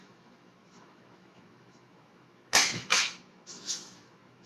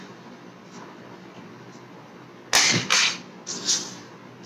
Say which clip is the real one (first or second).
second